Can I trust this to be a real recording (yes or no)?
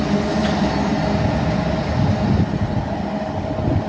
yes